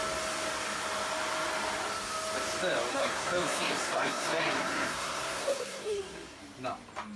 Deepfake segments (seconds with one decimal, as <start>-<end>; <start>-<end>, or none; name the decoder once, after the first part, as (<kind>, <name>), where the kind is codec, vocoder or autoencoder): 2.9-6.4 (codec, SNAC)